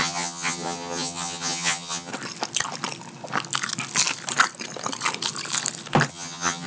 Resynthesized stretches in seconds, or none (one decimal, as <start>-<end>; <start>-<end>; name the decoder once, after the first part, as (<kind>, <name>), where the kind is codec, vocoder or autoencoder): 0.0-2.1 (vocoder, HiFi-GAN); 6.1-6.7